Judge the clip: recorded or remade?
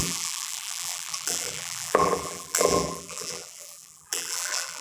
remade